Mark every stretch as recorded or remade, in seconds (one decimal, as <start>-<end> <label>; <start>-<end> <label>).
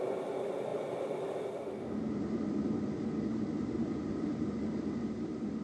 0.0-5.6 recorded